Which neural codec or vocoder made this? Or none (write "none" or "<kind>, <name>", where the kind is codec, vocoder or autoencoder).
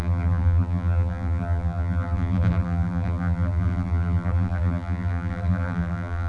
vocoder, BigVGAN v2